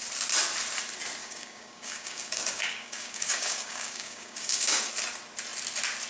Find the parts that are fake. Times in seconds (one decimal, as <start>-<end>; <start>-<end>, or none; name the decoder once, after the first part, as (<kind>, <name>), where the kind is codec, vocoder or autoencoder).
1.2-4.9 (codec, DAC)